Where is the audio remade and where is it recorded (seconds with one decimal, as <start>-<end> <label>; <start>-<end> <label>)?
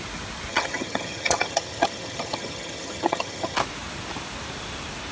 0.0-0.5 recorded; 0.5-3.6 remade; 3.6-5.1 recorded